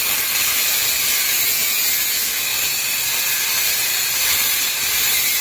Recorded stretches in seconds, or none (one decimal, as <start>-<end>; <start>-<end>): 0.0-2.5